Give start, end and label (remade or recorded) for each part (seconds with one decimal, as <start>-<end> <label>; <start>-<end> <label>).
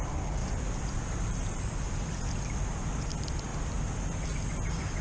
0.0-3.5 remade; 3.5-5.0 recorded